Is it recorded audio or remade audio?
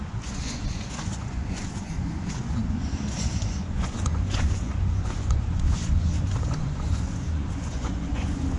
remade